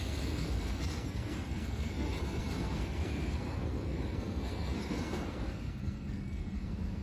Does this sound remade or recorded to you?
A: remade